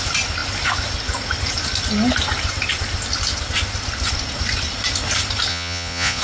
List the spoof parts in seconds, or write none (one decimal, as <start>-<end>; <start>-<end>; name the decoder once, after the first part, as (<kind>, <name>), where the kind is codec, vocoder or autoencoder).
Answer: 5.5-6.2 (vocoder, Vocos)